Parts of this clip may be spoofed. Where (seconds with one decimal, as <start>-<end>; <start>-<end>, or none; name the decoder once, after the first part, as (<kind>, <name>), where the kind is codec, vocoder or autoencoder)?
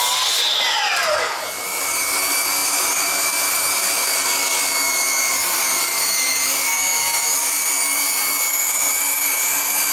1.1-9.9 (codec, DAC)